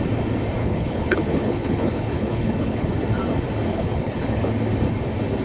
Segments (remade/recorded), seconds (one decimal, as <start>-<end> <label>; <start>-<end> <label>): 0.0-0.6 recorded; 0.6-2.9 remade; 2.9-3.7 recorded; 3.7-4.5 remade; 4.5-5.4 recorded